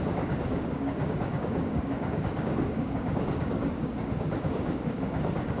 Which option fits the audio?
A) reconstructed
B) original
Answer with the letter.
A